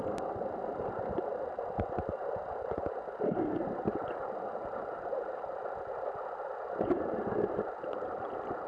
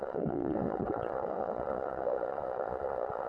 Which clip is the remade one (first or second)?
second